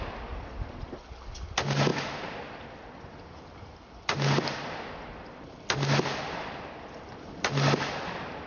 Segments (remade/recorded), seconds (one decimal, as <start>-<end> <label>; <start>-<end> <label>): 0.0-8.5 recorded